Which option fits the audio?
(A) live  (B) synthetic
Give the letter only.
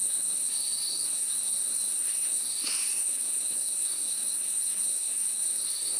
B